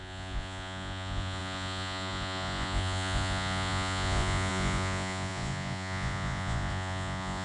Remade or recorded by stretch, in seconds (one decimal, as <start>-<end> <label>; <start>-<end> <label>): 0.0-7.4 remade